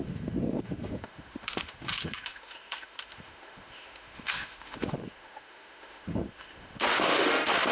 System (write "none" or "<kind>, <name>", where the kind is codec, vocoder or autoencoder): autoencoder, DAC-VAE